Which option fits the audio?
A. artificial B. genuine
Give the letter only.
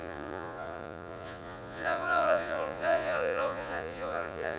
A